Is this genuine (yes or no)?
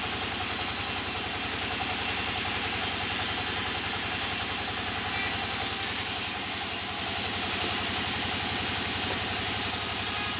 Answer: yes